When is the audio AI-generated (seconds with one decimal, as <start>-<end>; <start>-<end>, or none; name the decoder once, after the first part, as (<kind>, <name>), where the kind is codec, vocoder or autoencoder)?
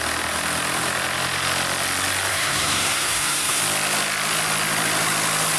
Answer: 2.3-3.6 (codec, SNAC)